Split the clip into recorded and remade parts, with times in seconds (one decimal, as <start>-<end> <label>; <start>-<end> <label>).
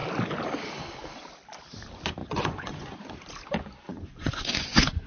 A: 0.0-2.2 recorded; 2.2-3.1 remade; 3.1-3.9 recorded; 3.9-5.1 remade